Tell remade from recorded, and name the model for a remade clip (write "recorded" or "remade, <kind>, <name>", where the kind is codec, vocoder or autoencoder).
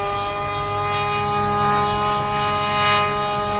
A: recorded